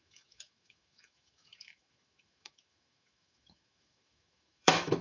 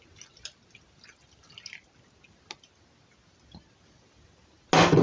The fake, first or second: first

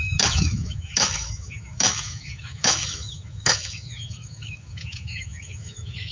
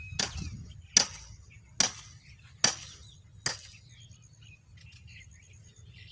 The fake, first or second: first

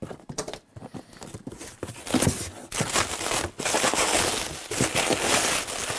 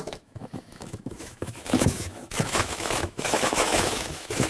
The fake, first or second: second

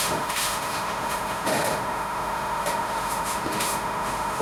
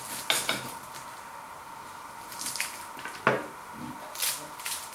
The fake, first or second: first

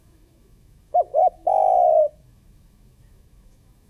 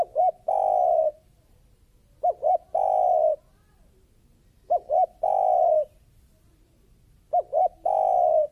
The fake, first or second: first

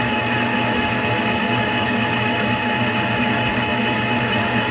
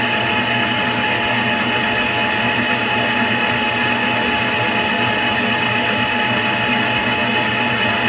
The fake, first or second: first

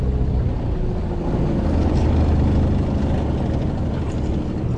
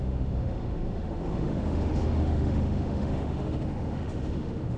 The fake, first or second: second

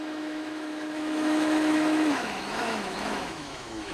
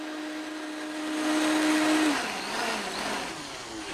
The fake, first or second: first